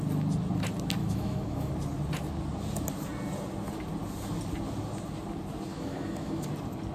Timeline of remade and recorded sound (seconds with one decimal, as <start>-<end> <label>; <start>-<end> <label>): 0.0-1.0 recorded; 1.0-1.7 remade; 1.7-5.7 recorded; 5.7-6.5 remade; 6.5-6.9 recorded